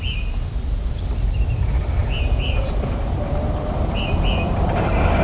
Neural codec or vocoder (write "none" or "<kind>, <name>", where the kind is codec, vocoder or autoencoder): none